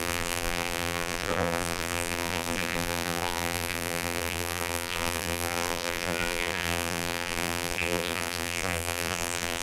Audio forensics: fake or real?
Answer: fake